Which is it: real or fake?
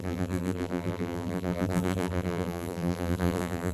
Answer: fake